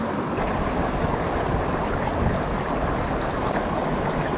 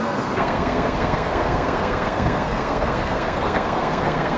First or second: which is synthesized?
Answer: second